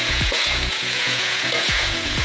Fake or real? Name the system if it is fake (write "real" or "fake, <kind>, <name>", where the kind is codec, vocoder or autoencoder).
fake, vocoder, Vocos